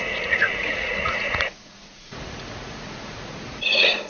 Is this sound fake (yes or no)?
yes